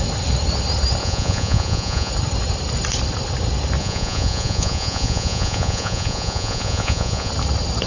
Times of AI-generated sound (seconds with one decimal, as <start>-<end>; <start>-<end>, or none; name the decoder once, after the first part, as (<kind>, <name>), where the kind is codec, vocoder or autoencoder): 1.0-2.1 (vocoder, Vocos); 3.8-7.3